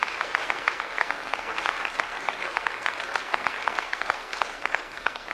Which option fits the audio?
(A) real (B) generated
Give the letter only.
B